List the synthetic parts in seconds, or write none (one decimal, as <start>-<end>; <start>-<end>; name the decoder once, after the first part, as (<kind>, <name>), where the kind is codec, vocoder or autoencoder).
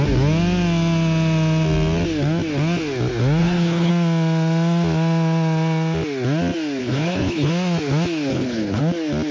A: 3.4-3.9 (codec, HILCodec); 6.8-7.5; 8.3-8.8